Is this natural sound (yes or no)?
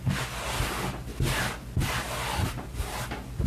yes